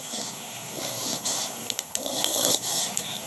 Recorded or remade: remade